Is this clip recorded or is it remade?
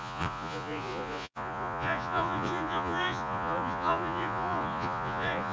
remade